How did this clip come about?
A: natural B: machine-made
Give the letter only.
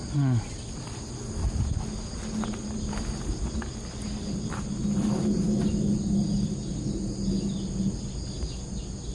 A